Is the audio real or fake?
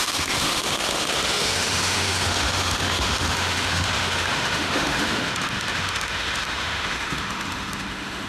fake